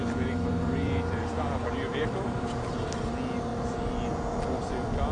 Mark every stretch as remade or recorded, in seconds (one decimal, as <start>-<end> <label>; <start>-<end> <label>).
0.0-3.1 remade; 3.1-5.1 recorded